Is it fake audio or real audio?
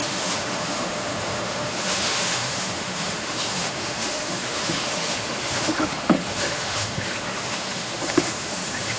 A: fake